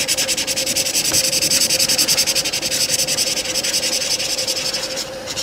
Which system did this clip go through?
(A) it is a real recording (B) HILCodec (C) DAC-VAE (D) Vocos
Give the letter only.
A